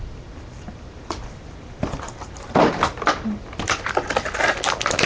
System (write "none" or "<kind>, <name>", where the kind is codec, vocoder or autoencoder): none